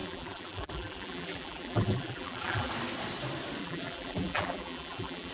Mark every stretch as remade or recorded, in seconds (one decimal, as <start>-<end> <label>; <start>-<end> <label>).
0.0-2.7 remade; 2.7-3.6 recorded; 3.6-5.3 remade